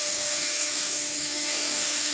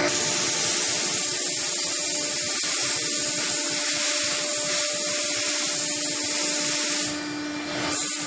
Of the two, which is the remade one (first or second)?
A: first